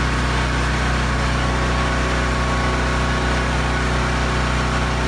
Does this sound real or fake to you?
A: real